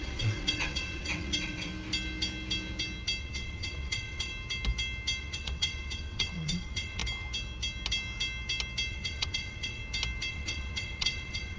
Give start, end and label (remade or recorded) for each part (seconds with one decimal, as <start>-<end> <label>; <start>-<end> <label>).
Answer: 0.0-1.7 remade; 1.7-3.2 recorded; 3.2-4.3 remade; 4.3-5.2 recorded; 5.2-7.0 remade; 7.0-8.9 recorded; 8.9-9.8 remade; 9.8-10.3 recorded; 10.3-11.6 remade